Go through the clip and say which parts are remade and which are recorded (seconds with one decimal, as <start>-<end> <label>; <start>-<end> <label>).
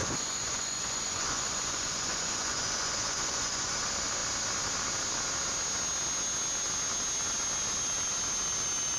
0.0-3.7 remade; 3.7-9.0 recorded